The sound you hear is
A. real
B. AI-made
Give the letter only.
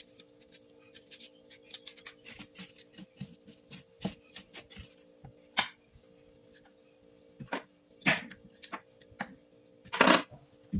A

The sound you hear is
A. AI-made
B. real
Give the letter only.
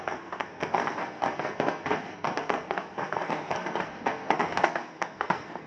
A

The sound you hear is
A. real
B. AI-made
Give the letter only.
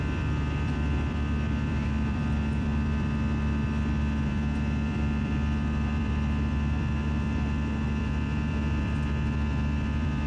B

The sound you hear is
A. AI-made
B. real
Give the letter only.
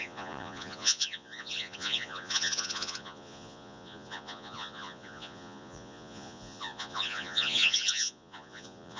A